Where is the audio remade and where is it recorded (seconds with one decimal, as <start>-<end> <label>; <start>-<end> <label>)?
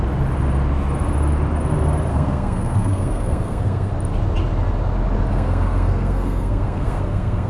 0.0-2.1 recorded; 2.1-3.9 remade; 3.9-5.3 recorded; 5.3-7.5 remade